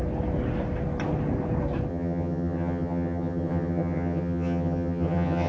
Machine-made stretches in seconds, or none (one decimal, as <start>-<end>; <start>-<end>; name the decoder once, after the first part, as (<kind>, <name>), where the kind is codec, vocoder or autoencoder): 1.9-5.5 (vocoder, HiFi-GAN)